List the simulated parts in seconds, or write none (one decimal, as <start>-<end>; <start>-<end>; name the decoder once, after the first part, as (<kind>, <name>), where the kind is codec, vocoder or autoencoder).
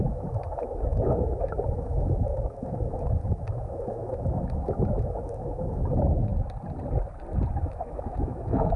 0.0-6.3 (autoencoder, DAC-VAE); 7.6-8.8